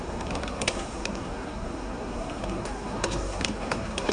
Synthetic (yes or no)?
yes